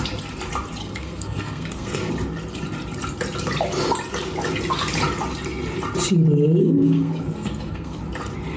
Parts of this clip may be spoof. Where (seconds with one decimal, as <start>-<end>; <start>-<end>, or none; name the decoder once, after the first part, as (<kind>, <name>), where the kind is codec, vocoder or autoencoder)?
0.8-2.1 (codec, SNAC); 6.6-8.0